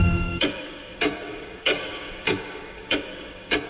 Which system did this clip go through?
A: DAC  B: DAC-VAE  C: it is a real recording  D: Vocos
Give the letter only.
A